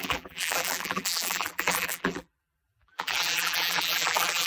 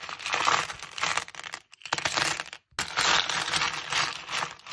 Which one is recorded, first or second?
second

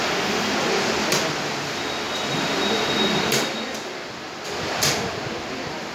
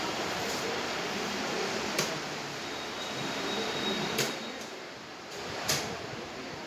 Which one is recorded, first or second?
first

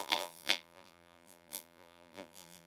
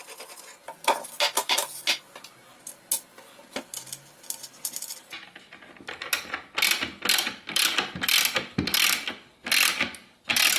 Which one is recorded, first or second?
second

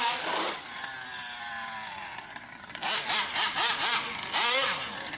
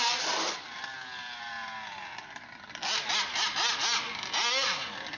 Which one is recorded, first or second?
second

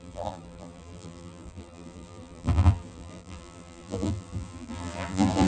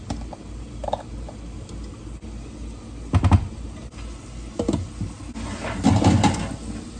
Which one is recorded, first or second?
second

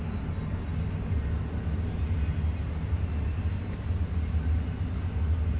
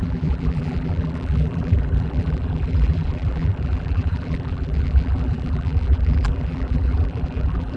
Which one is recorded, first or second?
first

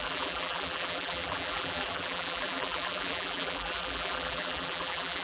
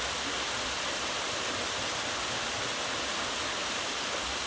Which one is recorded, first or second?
second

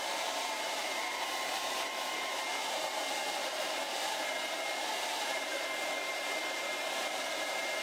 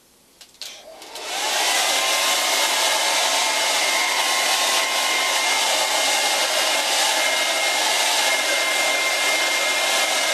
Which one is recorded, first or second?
second